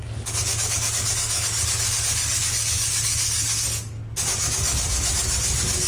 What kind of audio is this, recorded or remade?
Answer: remade